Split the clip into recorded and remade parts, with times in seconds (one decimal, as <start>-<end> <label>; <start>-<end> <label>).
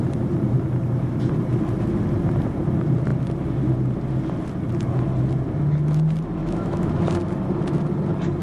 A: 0.0-6.4 recorded; 6.4-6.9 remade; 6.9-8.4 recorded